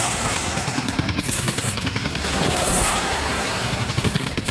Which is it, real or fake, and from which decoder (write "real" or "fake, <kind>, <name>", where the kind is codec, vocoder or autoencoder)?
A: fake, codec, SNAC